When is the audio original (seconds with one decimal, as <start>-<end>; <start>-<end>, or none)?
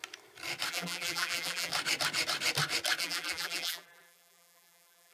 0.0-0.7; 1.7-3.0